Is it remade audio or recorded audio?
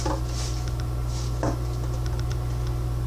recorded